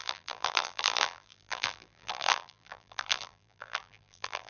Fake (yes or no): yes